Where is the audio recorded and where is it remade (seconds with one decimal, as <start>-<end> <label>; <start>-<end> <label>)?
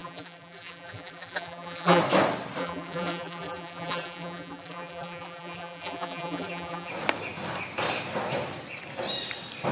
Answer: 0.0-2.0 remade; 2.0-2.6 recorded; 2.6-6.9 remade; 6.9-9.7 recorded